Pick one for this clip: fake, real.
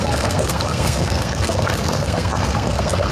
fake